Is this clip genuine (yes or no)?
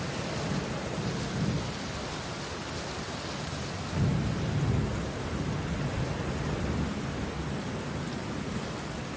yes